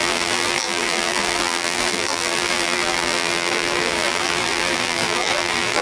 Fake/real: fake